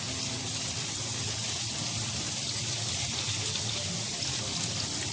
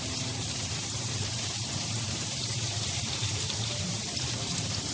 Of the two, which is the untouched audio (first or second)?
first